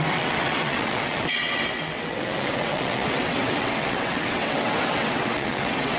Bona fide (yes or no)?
no